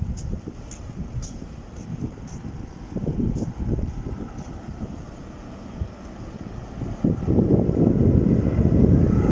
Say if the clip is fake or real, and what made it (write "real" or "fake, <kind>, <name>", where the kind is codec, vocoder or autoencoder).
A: real